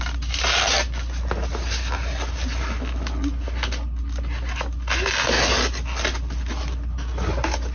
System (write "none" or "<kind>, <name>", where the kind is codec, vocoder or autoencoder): none